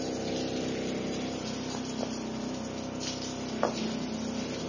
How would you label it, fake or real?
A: real